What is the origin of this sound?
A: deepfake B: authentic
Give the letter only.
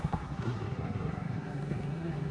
A